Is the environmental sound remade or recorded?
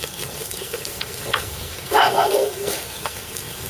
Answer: remade